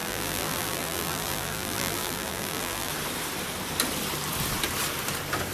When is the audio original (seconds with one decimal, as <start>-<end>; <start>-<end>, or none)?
2.9-5.5